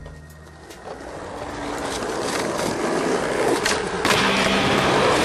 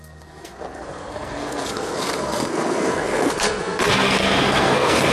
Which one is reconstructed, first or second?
second